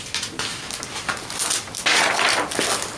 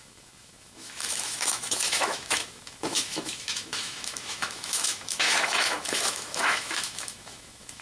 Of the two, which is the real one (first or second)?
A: first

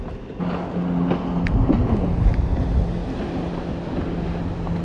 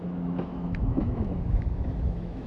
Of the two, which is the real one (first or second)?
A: first